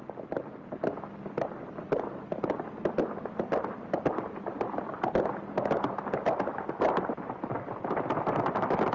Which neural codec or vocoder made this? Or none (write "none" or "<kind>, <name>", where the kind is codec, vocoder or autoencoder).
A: none